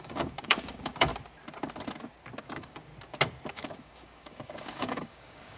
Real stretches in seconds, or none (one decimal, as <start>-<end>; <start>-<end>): 1.1-2.4; 2.9-3.5